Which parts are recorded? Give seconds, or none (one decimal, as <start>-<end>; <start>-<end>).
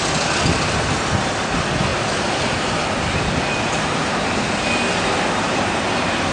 0.0-6.3